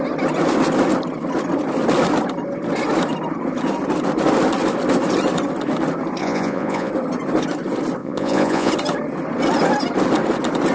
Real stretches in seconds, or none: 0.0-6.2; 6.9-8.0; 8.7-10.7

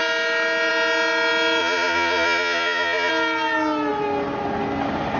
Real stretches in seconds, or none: 0.0-1.6; 3.1-5.2

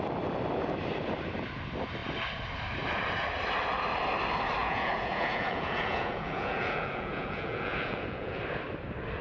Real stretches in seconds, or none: 0.0-4.6; 8.4-9.2

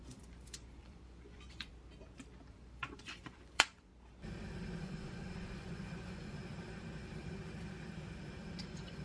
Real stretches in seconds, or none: 1.7-2.5; 3.9-4.8; 6.4-8.6

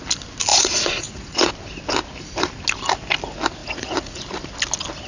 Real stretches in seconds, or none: 0.0-0.5; 1.5-3.6; 4.2-5.1

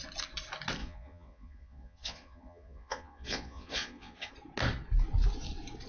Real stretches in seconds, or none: 0.0-0.8; 4.3-5.9